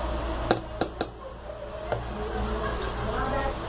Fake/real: real